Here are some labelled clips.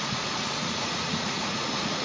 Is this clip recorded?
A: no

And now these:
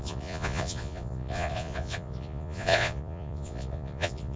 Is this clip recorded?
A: no